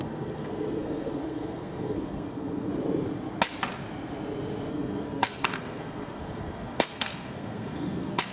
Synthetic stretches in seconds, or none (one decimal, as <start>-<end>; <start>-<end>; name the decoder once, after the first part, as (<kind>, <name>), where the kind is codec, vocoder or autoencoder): 0.0-2.7 (codec, SNAC); 4.7-8.3